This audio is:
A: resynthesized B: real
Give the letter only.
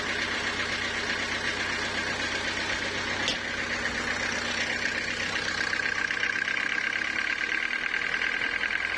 B